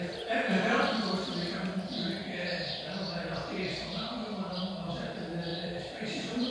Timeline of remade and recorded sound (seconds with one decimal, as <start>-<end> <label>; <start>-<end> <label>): 0.0-5.5 recorded; 5.5-6.5 remade